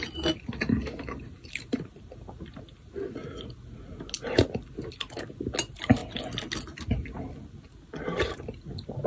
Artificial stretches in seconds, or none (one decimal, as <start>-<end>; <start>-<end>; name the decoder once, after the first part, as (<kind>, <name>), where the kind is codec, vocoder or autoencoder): none